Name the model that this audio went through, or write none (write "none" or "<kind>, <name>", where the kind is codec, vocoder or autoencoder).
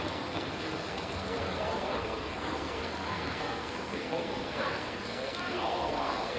codec, SNAC